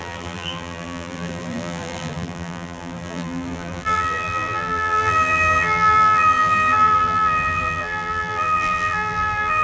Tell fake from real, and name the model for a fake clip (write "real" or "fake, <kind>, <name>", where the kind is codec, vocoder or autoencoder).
fake, vocoder, BigVGAN v2